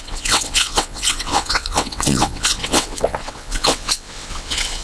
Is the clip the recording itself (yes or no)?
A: no